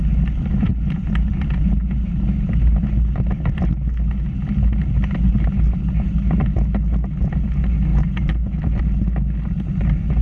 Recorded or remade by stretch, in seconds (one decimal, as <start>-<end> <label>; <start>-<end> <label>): 0.0-10.2 recorded